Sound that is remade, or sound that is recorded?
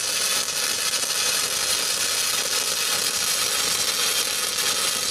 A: recorded